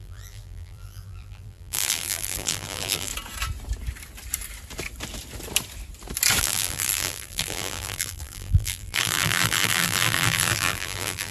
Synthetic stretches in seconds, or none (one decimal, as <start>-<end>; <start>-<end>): 0.0-3.1; 6.4-11.3